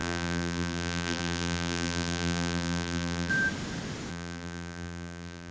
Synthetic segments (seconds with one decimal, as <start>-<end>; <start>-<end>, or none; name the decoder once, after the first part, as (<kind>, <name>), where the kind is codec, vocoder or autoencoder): 0.0-3.3 (vocoder, BigVGAN v2); 4.1-5.5